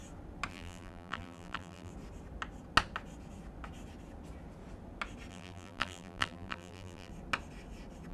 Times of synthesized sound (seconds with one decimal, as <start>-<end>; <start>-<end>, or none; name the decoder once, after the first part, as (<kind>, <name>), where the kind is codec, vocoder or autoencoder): 0.5-1.9 (vocoder, BigVGAN v2); 5.3-7.1